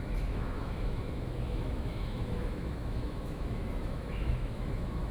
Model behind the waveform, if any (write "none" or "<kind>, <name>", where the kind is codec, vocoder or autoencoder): autoencoder, DAC-VAE